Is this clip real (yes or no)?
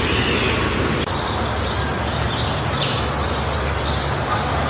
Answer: yes